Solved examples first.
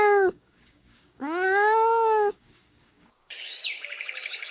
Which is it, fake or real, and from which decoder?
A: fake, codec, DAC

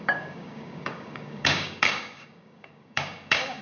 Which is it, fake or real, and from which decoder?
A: fake, codec, DAC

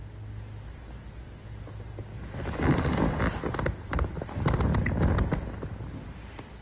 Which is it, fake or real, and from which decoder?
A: real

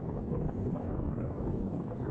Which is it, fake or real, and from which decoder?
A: fake, codec, DAC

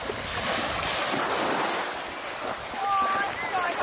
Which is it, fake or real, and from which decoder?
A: real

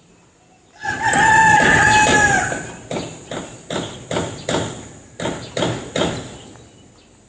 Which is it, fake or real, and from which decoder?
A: real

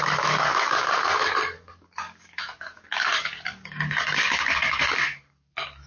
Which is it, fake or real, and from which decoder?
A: fake, codec, DAC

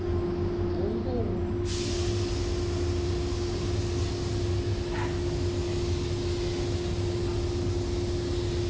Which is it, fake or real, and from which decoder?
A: real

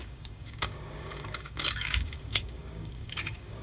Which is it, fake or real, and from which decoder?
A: fake, codec, DAC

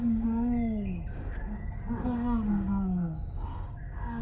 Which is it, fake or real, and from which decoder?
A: fake, codec, DAC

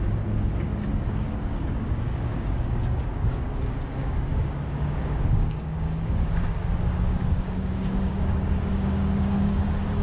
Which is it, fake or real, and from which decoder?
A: fake, codec, DAC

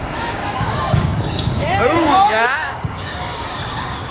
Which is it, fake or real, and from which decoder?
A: fake, codec, DAC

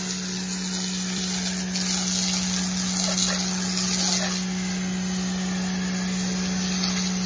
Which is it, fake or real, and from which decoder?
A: real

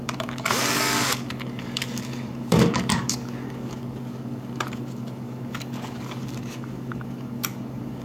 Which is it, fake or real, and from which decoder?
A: fake, codec, DAC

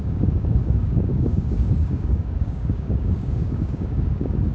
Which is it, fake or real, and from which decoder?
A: fake, codec, DAC